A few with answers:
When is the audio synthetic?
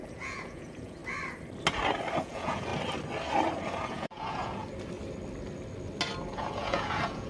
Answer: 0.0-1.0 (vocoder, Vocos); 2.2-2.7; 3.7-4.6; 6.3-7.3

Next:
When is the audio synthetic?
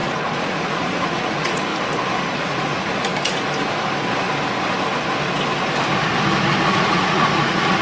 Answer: 0.0-1.7 (vocoder, Vocos); 2.3-3.1; 6.7-7.8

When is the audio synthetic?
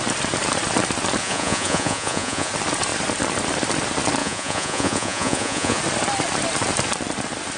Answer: 1.2-2.5 (vocoder, Vocos); 4.2-5.8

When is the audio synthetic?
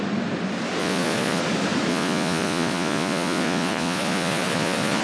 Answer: 0.8-1.4 (vocoder, Vocos); 1.9-5.0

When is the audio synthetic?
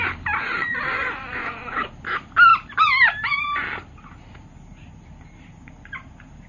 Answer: 0.4-1.9 (vocoder, Vocos)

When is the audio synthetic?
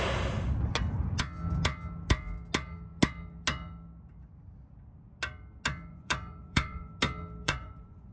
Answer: 5.9-6.9 (vocoder, Vocos); 7.4-8.1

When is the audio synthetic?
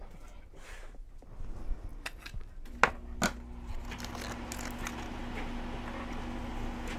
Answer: none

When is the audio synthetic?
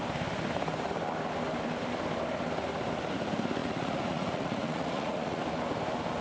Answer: 3.6-5.4 (vocoder, Vocos)